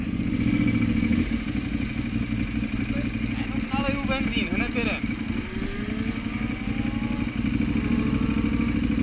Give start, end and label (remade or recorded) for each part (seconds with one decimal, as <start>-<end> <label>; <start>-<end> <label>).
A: 0.0-9.0 recorded